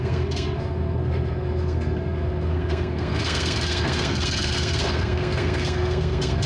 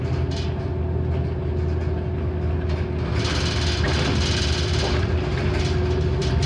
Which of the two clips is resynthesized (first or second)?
first